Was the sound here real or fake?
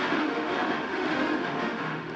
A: fake